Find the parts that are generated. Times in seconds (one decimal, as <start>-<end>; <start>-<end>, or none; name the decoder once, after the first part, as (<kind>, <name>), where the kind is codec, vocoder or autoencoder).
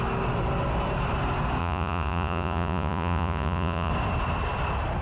1.6-3.9 (vocoder, Vocos)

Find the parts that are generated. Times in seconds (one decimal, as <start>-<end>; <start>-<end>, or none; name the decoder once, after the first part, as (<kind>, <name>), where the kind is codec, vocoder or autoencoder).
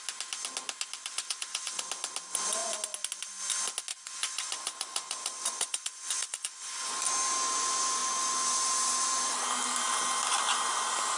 1.1-1.8 (vocoder, Vocos); 3.9-7.0